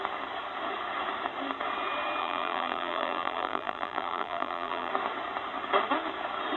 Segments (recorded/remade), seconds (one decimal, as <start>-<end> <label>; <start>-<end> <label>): 0.0-2.2 recorded; 2.2-4.9 remade; 4.9-6.6 recorded

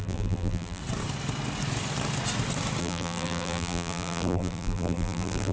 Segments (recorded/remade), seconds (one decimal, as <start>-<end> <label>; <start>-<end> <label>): 0.0-0.8 remade; 0.8-2.8 recorded; 2.8-5.5 remade

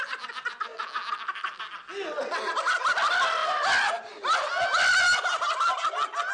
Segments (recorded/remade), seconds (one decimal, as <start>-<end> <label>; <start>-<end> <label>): 0.0-6.3 recorded

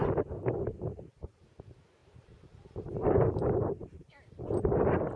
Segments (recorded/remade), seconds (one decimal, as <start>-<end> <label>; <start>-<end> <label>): 0.0-2.0 recorded; 2.0-4.4 remade; 4.4-5.2 recorded

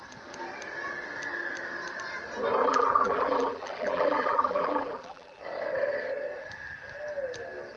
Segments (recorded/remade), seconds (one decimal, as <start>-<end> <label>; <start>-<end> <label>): 0.0-2.6 recorded; 2.6-5.4 remade; 5.4-7.8 recorded

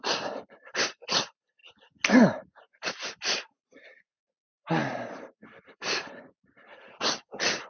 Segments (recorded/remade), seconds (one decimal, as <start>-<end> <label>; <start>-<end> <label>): 0.0-1.6 remade; 1.6-2.4 recorded; 2.4-7.7 remade

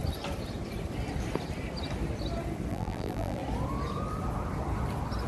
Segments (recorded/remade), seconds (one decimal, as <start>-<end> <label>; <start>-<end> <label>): 0.0-2.7 recorded; 2.7-3.4 remade; 3.4-5.3 recorded

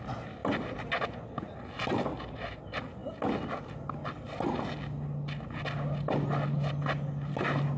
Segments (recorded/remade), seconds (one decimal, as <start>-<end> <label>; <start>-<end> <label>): 0.0-0.4 recorded; 0.4-1.2 remade; 1.2-2.1 recorded; 2.1-2.6 remade; 2.6-7.8 recorded